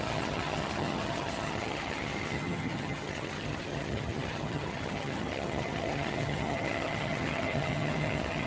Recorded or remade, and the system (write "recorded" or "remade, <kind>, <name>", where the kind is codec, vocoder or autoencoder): remade, vocoder, HiFi-GAN